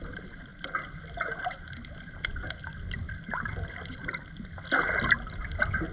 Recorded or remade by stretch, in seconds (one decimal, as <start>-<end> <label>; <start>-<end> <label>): 0.0-5.9 recorded